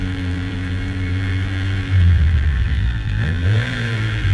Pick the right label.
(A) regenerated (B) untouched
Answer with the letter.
A